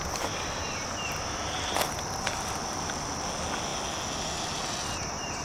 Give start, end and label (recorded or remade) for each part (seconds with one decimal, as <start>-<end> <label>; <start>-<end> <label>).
0.0-5.4 recorded